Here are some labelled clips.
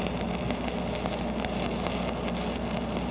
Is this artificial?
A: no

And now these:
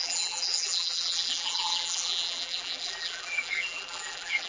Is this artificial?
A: yes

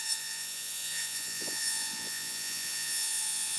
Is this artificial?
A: yes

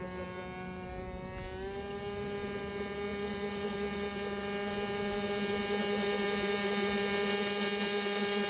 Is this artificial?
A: no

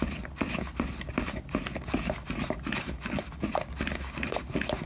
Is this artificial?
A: no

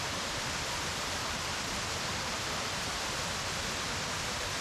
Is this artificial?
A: no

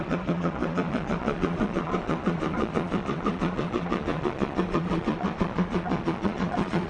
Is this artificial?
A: yes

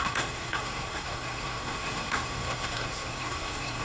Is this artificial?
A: yes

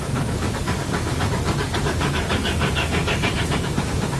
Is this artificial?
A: yes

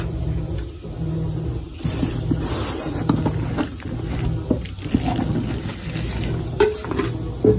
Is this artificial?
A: no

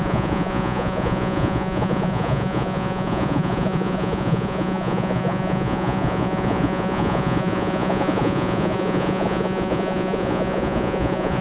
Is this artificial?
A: yes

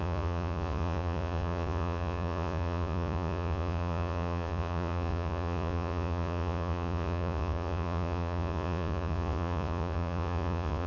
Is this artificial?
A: yes